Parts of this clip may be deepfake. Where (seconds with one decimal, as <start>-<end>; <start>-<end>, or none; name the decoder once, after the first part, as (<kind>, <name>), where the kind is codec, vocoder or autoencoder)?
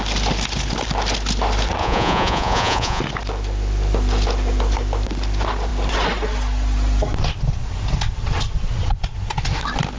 1.8-3.0 (vocoder, Vocos)